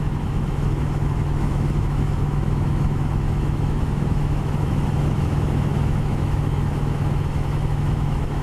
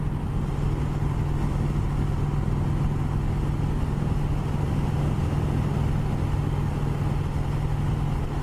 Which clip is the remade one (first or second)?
first